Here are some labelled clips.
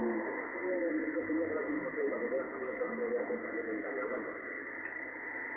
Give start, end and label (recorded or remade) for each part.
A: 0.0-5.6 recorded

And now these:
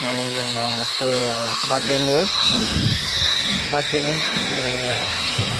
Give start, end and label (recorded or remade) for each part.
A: 0.0-5.6 remade

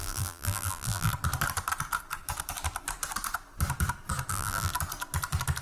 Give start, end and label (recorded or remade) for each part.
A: 0.0-1.1 remade; 1.1-4.3 recorded; 4.3-4.7 remade; 4.7-5.6 recorded

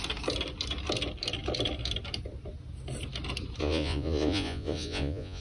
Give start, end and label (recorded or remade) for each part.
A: 0.0-3.6 recorded; 3.6-5.4 remade